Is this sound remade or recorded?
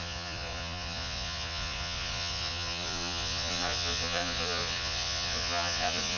remade